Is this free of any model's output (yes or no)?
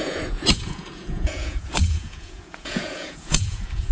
no